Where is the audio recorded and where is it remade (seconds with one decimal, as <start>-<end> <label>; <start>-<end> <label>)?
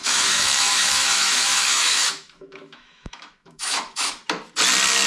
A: 0.0-4.2 remade; 4.2-5.1 recorded